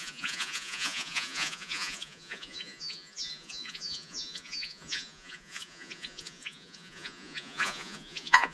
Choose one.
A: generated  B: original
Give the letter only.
A